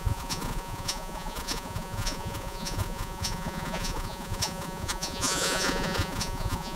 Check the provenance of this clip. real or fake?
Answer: fake